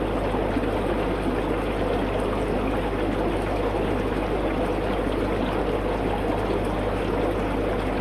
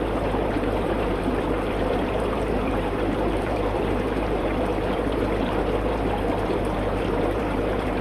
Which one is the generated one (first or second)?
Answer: second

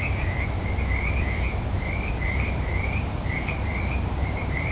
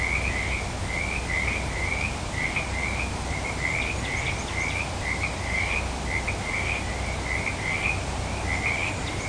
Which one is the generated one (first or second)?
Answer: first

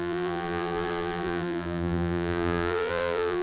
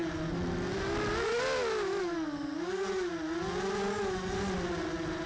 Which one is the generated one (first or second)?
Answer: first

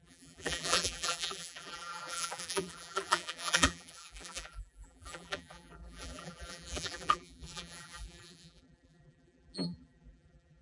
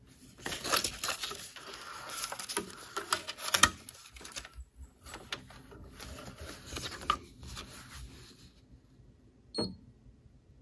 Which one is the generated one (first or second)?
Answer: first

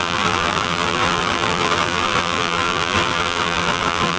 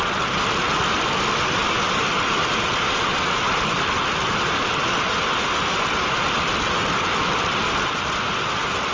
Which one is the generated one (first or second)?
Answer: first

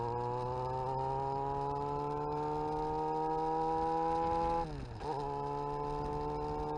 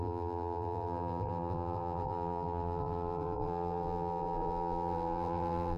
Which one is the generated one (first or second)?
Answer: second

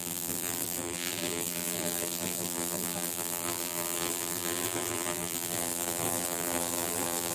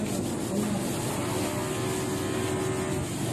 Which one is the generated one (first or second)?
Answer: first